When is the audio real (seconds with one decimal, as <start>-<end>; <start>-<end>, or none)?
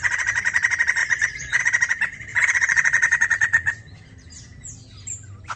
0.0-1.0; 1.6-2.3; 3.7-5.6